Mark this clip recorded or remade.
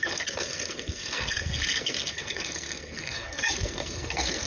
remade